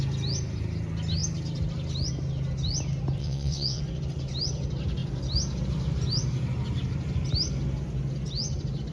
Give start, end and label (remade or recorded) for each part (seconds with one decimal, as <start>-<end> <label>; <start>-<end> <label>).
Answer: 0.0-3.2 recorded; 3.2-3.8 remade; 3.8-8.9 recorded